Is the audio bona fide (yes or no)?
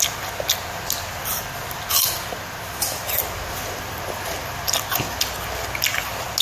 yes